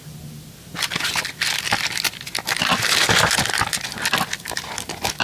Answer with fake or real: real